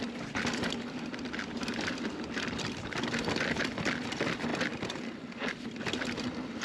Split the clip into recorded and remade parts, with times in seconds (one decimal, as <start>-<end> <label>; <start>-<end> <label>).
0.0-4.5 remade; 4.5-5.5 recorded; 5.5-6.6 remade